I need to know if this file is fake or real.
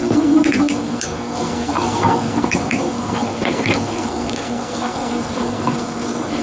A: fake